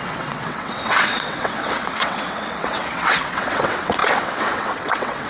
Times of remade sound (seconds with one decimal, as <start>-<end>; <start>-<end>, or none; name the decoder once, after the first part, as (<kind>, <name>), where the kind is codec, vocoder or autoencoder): 0.0-5.3 (vocoder, WaveNeXt)